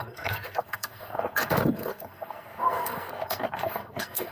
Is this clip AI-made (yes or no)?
yes